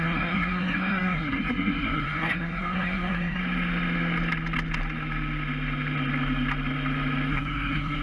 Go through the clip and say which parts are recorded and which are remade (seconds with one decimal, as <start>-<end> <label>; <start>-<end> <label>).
0.0-3.4 remade; 3.4-7.3 recorded; 7.3-8.0 remade